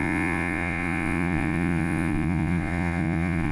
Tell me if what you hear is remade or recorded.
remade